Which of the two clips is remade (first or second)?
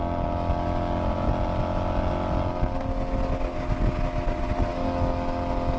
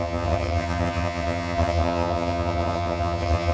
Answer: second